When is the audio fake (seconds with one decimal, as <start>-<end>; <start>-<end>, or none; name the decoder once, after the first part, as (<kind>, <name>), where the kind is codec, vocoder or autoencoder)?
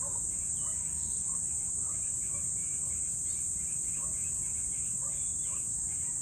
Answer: 0.8-1.4 (codec, DAC)